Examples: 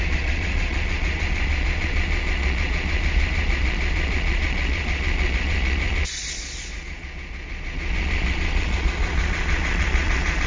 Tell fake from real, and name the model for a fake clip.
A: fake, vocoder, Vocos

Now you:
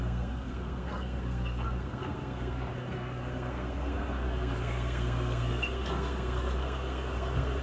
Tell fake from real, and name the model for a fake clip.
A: fake, codec, SNAC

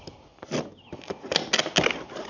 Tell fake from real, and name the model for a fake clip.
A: real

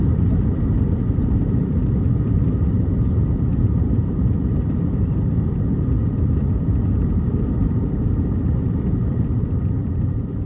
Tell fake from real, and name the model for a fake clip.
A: fake, vocoder, BigVGAN v2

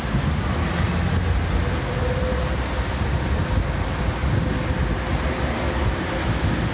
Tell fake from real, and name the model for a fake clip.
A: real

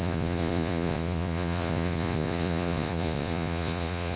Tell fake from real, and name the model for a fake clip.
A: fake, vocoder, Vocos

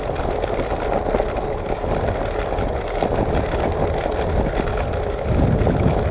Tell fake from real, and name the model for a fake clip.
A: real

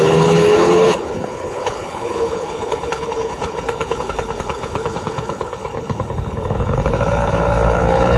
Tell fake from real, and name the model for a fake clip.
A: fake, codec, HILCodec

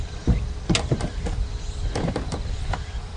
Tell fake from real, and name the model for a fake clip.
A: real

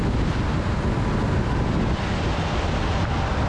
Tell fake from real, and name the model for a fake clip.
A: real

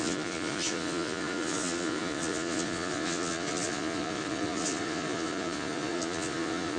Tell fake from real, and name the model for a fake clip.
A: fake, vocoder, Vocos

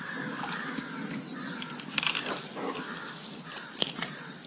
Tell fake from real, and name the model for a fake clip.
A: real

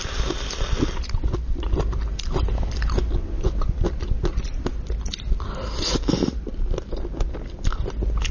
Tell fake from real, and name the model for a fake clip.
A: real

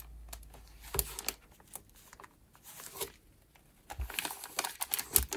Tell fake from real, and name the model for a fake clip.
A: real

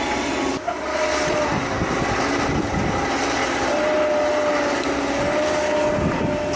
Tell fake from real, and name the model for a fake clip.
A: real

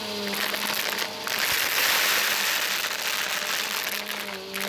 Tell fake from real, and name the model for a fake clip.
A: real